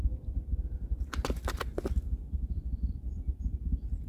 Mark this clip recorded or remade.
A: recorded